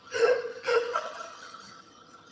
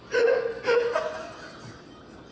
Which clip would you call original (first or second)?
second